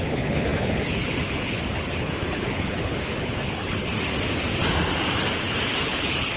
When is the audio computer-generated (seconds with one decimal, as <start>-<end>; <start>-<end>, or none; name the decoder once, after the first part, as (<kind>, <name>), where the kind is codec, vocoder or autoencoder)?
0.0-3.9 (codec, HILCodec); 5.8-6.4